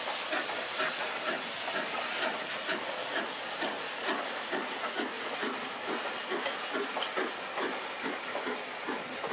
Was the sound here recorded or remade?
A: recorded